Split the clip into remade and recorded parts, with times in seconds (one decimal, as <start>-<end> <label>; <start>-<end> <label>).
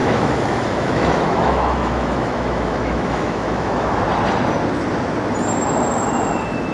0.0-4.0 remade; 4.0-6.7 recorded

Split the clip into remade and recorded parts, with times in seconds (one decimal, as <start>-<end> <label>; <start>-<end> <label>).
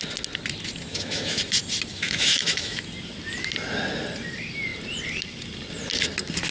0.0-0.9 recorded; 0.9-1.4 remade; 1.4-1.9 recorded; 1.9-2.8 remade; 2.8-6.5 recorded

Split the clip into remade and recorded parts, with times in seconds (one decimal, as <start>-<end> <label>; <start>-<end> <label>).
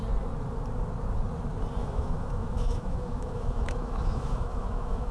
0.0-1.8 recorded; 1.8-5.1 remade